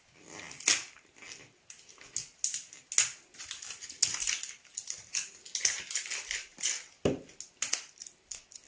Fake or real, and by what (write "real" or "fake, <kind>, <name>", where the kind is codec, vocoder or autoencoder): real